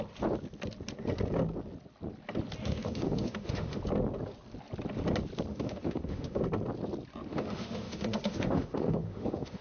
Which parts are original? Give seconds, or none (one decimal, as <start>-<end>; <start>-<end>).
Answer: 0.0-2.6; 3.8-5.5; 6.4-7.3

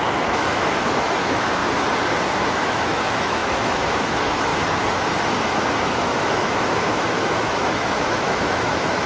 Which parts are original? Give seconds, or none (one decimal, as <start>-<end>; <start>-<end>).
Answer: 1.6-2.5; 4.5-5.8

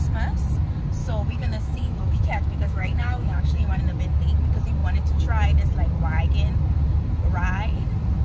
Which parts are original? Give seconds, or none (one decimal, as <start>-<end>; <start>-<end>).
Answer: 0.0-1.0; 3.8-8.2

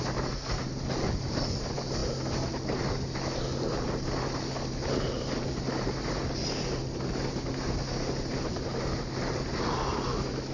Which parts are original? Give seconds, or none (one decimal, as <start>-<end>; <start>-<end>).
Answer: 0.0-10.5

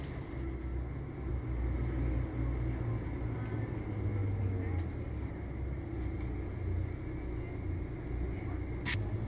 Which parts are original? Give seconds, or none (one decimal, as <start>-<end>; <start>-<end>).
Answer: 0.0-9.3

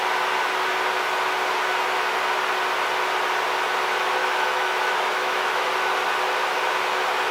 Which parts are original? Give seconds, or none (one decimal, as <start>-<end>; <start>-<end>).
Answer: 0.0-4.2; 5.7-7.3

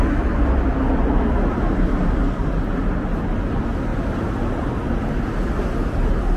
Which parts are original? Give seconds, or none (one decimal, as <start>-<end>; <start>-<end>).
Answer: 0.0-6.4

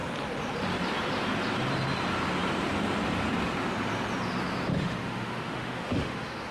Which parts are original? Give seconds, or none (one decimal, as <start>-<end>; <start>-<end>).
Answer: 0.0-4.7